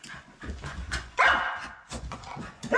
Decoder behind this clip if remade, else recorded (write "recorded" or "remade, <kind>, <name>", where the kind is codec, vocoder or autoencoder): remade, vocoder, Vocos